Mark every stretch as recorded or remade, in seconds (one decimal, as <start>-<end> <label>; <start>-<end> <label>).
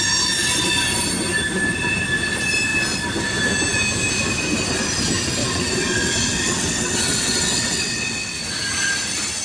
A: 0.0-5.4 recorded; 5.4-8.6 remade; 8.6-9.4 recorded